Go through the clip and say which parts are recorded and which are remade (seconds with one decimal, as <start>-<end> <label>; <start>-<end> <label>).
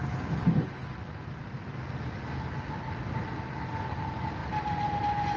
0.0-4.4 recorded; 4.4-5.0 remade; 5.0-5.4 recorded